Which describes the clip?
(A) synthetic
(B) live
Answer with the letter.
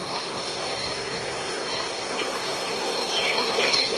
A